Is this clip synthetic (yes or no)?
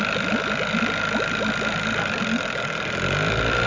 no